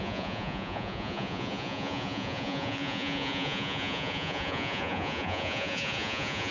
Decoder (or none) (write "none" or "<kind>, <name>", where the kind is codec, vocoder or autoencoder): vocoder, Vocos